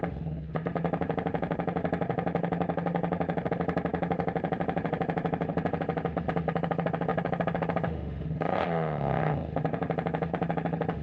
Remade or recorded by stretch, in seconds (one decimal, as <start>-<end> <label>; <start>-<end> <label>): 0.0-11.0 remade